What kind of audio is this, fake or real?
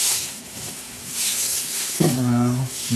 fake